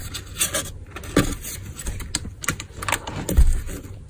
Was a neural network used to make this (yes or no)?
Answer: no